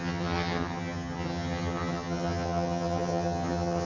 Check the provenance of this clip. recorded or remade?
remade